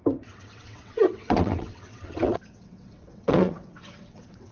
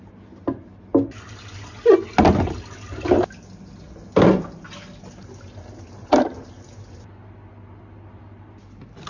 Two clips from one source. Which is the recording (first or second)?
second